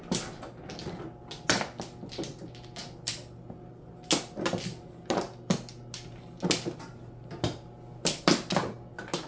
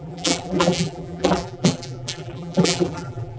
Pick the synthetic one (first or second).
second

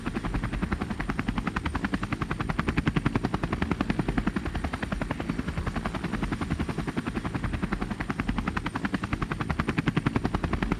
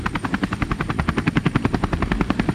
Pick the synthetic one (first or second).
second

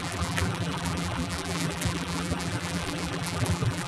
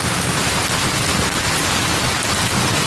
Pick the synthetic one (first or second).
first